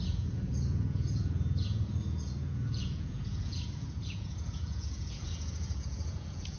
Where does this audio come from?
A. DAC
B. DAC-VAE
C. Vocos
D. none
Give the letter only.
C